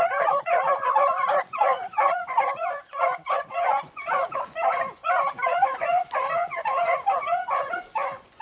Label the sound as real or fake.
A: fake